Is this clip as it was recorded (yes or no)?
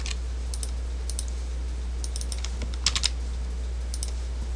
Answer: yes